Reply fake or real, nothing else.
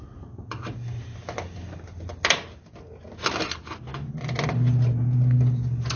real